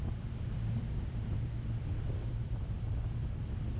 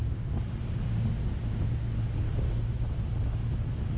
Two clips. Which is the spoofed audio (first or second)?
first